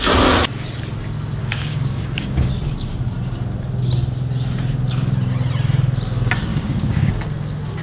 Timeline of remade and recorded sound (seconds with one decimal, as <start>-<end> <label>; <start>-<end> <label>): 0.0-1.4 recorded; 1.4-2.5 remade; 2.5-6.5 recorded; 6.5-7.1 remade; 7.1-7.8 recorded